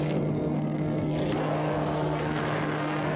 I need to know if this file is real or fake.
fake